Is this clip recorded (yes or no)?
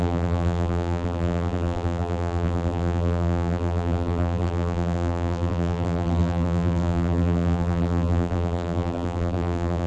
no